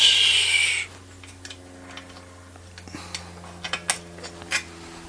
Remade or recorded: recorded